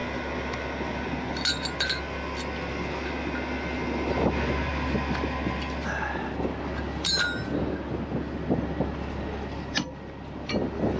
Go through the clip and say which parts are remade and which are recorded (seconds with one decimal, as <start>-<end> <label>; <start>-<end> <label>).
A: 0.0-11.0 recorded